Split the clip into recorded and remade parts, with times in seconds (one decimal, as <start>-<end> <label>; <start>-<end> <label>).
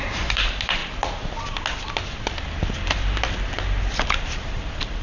0.0-0.8 remade; 0.8-3.8 recorded; 3.8-5.0 remade